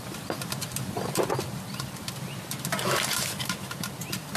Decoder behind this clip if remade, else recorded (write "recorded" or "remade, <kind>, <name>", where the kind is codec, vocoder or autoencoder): remade, vocoder, BigVGAN v2